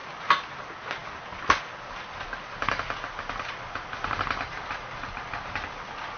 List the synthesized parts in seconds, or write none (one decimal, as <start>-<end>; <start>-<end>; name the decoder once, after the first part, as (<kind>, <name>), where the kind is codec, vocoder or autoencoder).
none